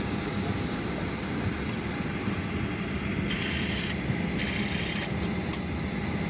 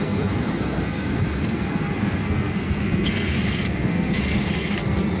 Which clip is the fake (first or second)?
second